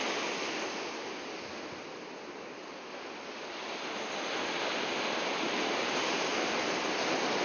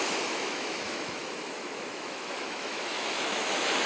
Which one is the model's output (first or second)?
second